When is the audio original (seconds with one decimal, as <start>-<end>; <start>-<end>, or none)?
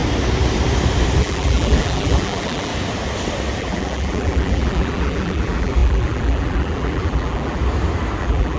0.0-1.2; 2.7-3.6; 7.6-8.2